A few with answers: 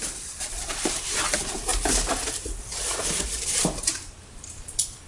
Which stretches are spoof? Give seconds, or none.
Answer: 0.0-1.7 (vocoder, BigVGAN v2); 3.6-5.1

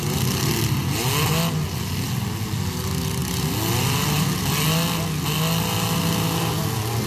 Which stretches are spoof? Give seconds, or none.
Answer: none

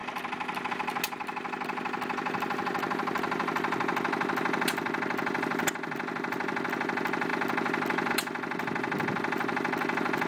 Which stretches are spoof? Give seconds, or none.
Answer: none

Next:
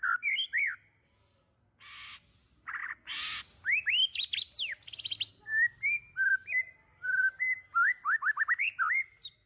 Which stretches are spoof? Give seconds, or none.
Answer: 7.2-8.2 (vocoder, BigVGAN v2)

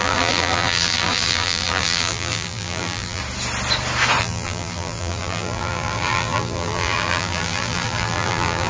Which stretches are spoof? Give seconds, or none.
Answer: 0.0-3.2 (vocoder, BigVGAN v2); 4.2-8.7